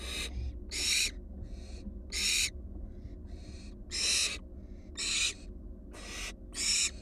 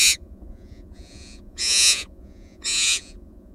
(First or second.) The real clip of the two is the first